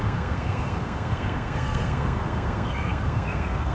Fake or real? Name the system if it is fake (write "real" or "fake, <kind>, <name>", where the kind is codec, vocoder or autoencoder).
fake, codec, SNAC